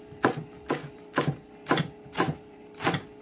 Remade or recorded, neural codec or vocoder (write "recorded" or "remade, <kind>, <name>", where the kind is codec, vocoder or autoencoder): remade, vocoder, BigVGAN v2